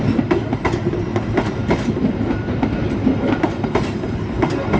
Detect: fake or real real